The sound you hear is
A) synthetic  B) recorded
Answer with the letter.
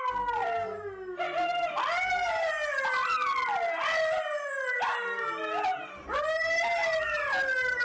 B